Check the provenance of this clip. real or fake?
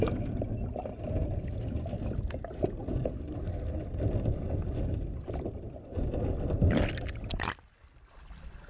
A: real